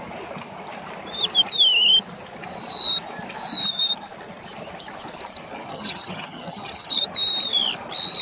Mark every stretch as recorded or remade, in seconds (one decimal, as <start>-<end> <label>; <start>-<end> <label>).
0.0-5.7 recorded; 5.7-7.0 remade; 7.0-8.2 recorded